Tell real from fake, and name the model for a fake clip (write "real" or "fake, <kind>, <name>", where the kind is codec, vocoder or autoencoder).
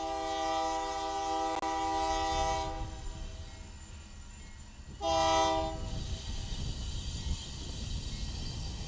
real